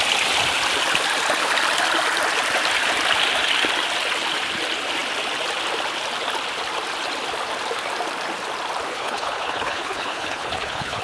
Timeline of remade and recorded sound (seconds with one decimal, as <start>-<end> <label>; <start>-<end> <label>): 0.0-8.9 recorded; 8.9-11.0 remade